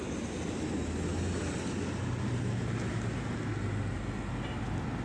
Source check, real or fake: real